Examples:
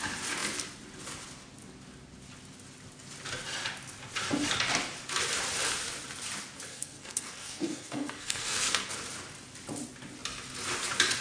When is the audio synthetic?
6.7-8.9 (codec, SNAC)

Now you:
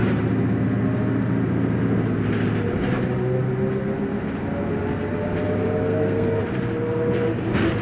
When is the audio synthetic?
5.9-6.4 (codec, SNAC)

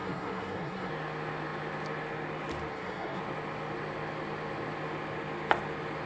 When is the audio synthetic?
0.0-0.9 (codec, SNAC); 2.7-3.2